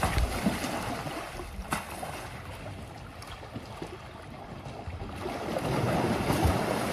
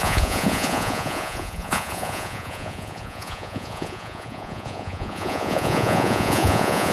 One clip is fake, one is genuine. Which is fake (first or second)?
second